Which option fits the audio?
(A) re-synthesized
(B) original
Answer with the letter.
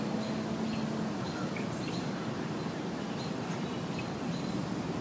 B